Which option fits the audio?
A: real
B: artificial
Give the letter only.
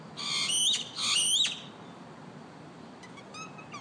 A